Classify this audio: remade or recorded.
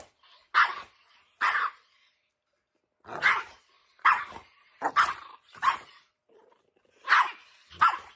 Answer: recorded